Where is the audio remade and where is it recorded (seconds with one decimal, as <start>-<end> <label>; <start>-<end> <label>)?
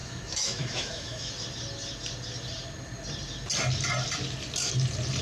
0.0-1.3 remade; 1.3-5.2 recorded